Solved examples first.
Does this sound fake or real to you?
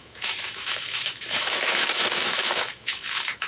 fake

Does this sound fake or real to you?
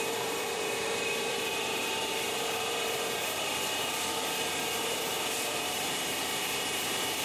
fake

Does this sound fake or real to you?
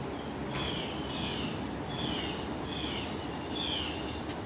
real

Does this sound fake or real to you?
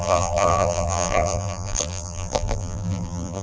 fake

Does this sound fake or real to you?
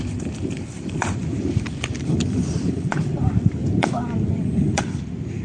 fake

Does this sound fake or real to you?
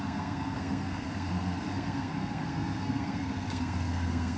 fake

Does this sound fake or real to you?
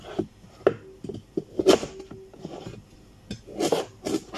real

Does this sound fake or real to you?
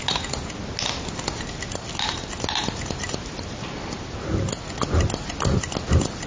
real